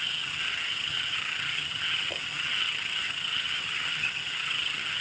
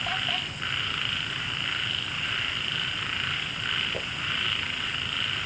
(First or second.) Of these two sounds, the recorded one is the second